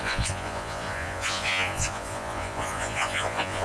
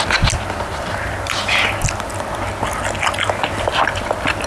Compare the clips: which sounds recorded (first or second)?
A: second